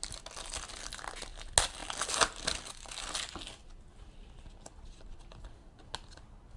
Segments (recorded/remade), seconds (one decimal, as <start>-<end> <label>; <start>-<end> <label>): 0.0-6.6 recorded